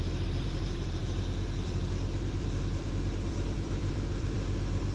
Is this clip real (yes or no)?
no